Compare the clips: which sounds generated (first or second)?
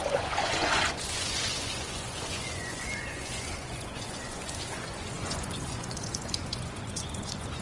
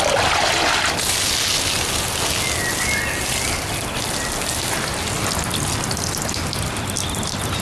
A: first